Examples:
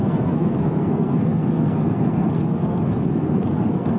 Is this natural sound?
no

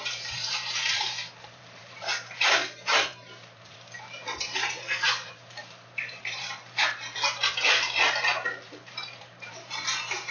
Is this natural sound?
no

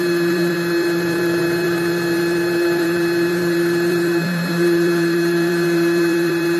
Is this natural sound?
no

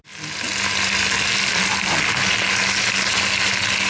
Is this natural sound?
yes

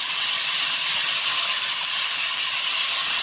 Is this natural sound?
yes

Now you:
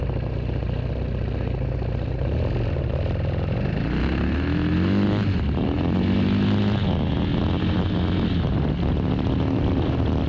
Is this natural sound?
yes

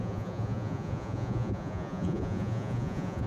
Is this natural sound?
no